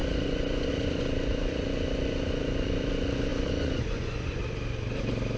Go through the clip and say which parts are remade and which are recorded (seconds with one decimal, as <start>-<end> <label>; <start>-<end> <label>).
0.0-4.4 remade; 4.4-5.4 recorded